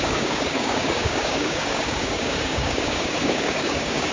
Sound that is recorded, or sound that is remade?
remade